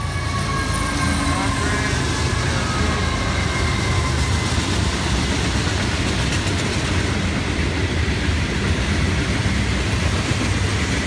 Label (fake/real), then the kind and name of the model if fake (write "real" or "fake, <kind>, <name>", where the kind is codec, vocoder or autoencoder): real